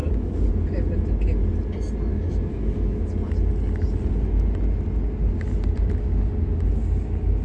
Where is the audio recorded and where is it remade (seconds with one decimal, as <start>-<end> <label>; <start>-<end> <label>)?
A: 0.0-0.5 remade; 0.5-2.1 recorded; 2.1-3.1 remade; 3.1-7.4 recorded